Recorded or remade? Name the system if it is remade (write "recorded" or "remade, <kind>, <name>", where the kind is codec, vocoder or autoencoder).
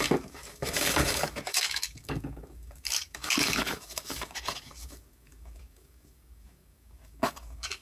remade, codec, DAC